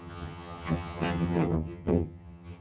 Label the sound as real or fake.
fake